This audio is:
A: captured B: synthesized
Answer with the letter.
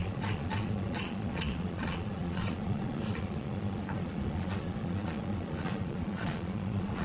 B